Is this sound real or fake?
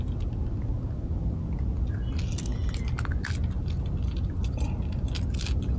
real